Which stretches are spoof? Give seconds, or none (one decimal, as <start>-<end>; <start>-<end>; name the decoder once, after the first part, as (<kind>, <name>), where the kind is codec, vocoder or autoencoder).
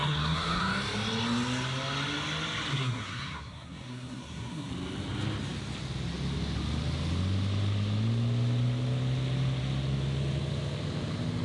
0.0-0.6 (codec, SNAC); 2.7-4.7